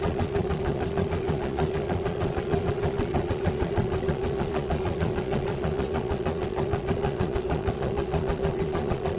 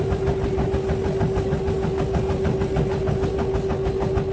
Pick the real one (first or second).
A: second